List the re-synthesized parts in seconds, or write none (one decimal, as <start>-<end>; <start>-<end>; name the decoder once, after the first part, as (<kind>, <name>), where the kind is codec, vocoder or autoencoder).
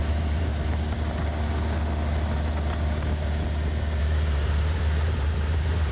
0.0-0.5 (vocoder, BigVGAN v2); 4.0-5.9